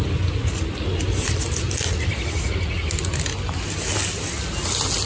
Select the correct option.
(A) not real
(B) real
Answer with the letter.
B